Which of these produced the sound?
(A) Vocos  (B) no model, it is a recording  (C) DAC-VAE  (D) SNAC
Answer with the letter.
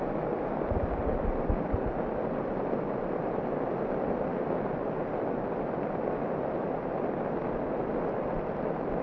B